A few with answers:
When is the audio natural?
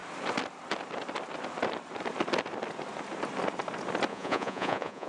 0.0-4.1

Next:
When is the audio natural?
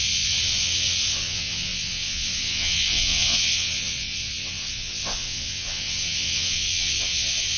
none